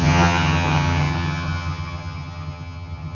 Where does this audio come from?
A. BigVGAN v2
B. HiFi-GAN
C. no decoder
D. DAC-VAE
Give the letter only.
B